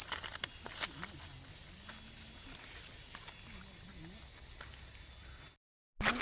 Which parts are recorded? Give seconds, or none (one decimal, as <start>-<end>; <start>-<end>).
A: 0.0-6.2

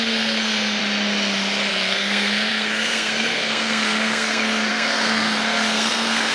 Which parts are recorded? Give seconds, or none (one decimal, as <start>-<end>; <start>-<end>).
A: 0.8-1.7